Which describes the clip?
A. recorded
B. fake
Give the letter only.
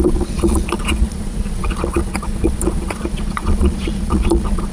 B